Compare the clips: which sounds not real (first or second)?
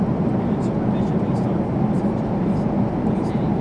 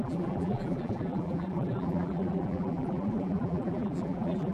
second